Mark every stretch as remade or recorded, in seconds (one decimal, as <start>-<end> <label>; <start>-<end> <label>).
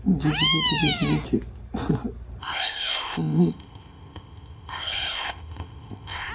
0.0-2.4 recorded; 2.4-6.3 remade